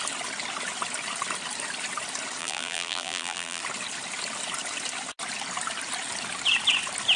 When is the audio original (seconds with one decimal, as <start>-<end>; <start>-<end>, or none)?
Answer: 0.0-2.4; 3.6-7.2